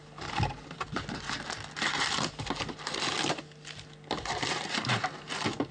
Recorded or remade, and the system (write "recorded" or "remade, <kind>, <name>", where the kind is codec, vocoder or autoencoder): recorded